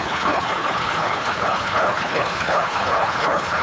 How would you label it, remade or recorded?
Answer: remade